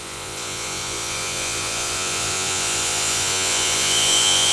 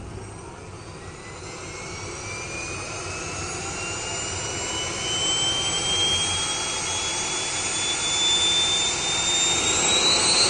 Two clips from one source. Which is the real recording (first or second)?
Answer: second